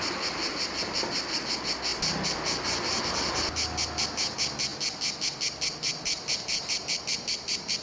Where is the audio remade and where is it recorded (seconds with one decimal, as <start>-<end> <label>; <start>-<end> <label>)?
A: 0.0-7.8 recorded